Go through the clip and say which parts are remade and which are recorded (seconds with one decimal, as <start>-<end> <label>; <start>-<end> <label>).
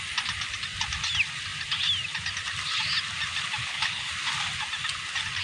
0.0-3.6 recorded; 3.6-4.1 remade; 4.1-5.4 recorded